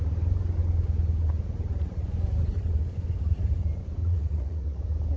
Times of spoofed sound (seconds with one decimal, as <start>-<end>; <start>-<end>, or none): 4.0-4.8